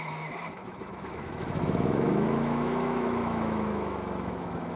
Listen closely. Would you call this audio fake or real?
fake